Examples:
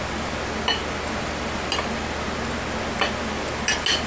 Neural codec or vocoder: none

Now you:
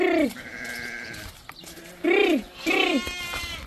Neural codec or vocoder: none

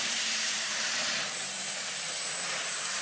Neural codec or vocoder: vocoder, BigVGAN v2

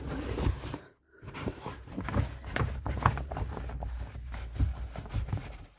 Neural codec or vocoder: vocoder, BigVGAN v2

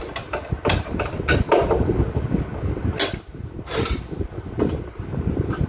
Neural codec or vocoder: none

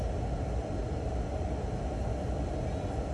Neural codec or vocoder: none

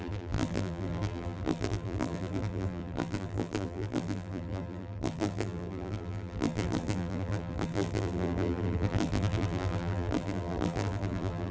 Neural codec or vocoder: vocoder, BigVGAN v2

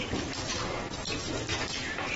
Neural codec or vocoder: none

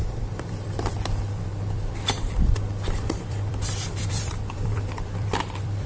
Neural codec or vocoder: vocoder, BigVGAN v2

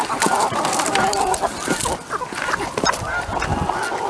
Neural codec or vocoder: none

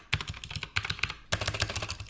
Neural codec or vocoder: none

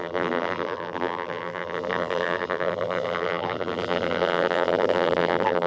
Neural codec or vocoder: vocoder, BigVGAN v2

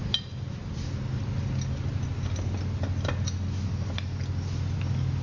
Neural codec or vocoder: none